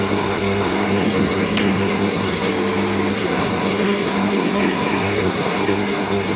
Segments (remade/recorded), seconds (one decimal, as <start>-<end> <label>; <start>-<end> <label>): 0.0-2.5 remade; 2.5-3.1 recorded; 3.1-6.4 remade